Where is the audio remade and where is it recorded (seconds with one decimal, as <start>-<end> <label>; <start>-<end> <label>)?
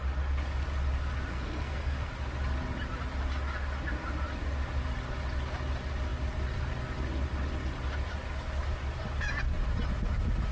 0.0-1.3 recorded; 1.3-2.1 remade; 2.1-10.5 recorded